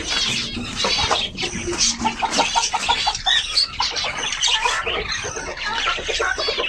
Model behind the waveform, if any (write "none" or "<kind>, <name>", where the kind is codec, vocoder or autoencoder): none